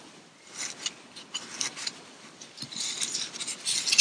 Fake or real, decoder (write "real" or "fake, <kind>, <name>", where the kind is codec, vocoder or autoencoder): real